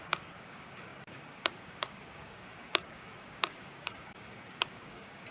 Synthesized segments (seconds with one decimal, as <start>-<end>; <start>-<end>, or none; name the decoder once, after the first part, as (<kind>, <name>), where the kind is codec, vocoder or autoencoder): 0.0-5.3 (codec, DAC)